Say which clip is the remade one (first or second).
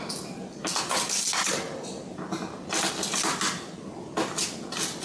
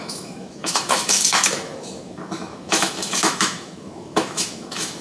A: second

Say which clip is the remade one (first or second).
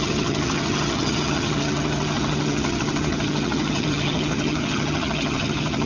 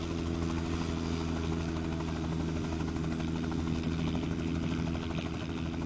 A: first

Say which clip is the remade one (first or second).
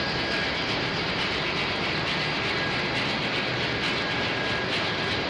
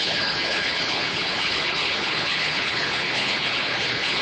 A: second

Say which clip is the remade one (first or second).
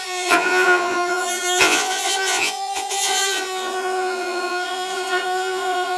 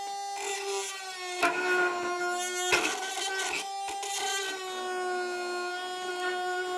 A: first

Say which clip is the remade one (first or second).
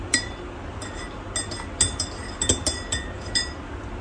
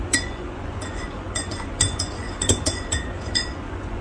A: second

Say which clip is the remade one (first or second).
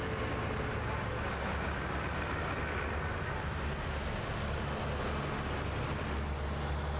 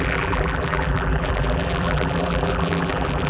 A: second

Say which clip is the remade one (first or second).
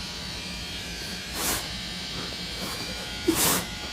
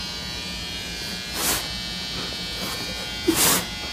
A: first